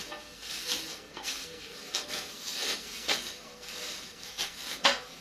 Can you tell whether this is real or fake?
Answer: fake